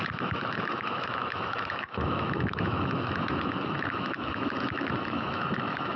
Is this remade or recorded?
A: remade